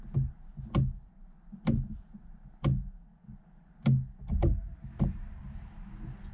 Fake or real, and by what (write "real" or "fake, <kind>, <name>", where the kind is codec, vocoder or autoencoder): real